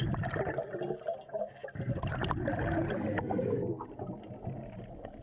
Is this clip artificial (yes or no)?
no